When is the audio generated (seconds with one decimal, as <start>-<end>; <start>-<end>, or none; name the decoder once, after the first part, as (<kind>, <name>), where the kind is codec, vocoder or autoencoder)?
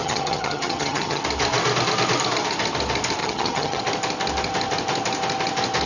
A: 0.0-1.2 (vocoder, HiFi-GAN); 3.2-3.8